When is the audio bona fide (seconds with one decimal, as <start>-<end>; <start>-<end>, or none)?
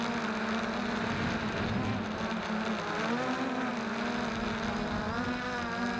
0.0-6.0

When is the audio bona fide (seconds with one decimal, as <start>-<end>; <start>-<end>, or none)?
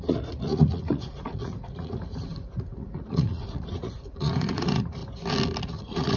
5.0-5.6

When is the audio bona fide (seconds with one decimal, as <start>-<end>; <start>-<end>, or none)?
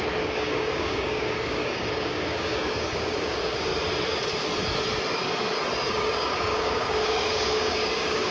3.7-5.9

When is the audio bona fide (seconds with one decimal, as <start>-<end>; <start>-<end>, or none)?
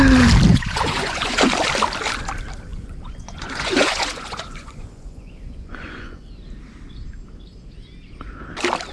0.0-0.5; 1.5-2.7; 6.3-8.9